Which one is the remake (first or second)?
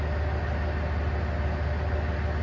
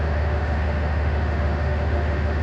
second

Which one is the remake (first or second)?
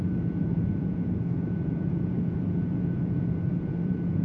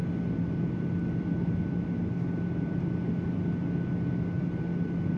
first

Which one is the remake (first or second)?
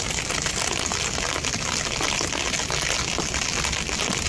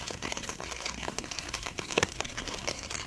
second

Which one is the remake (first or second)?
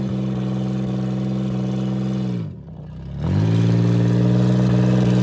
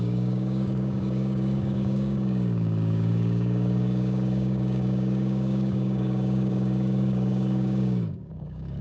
second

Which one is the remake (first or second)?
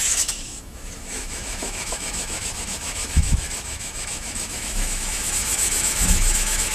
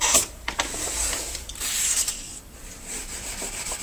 first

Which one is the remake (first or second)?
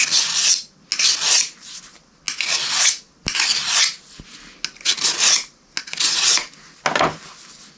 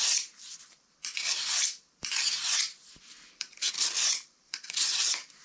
second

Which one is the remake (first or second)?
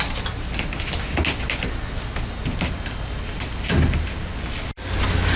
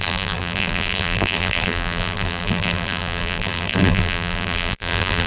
second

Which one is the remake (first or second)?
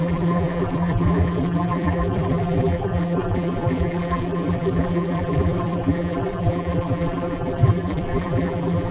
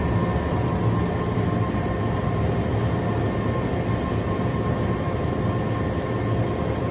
first